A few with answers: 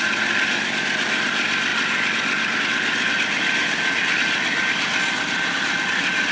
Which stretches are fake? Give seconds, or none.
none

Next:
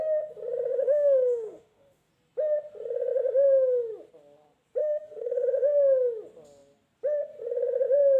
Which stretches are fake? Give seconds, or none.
0.7-2.1 (autoencoder, DAC-VAE); 4.8-5.5

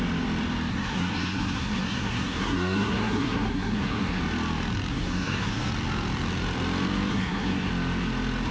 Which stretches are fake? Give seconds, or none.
0.7-4.2 (codec, SNAC); 4.9-5.7; 7.1-7.7

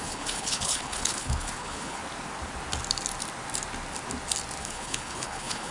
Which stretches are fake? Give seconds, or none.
0.0-2.0 (codec, HILCodec); 4.6-5.7

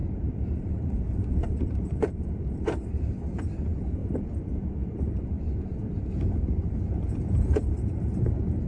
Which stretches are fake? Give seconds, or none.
0.0-4.0 (vocoder, BigVGAN v2); 4.9-8.7